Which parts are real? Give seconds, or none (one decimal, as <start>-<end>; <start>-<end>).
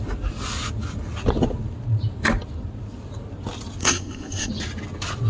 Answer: 0.0-3.8; 4.5-5.3